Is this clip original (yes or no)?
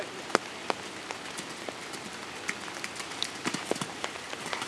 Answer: yes